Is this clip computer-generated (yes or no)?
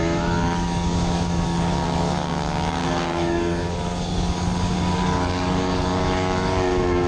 yes